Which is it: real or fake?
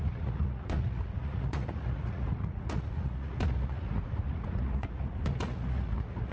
fake